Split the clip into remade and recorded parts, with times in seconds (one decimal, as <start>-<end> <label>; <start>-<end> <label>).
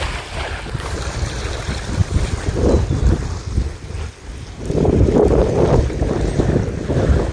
0.0-7.3 recorded